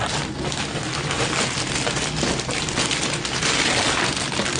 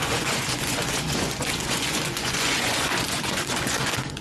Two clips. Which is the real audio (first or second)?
first